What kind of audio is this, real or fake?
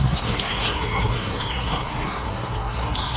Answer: fake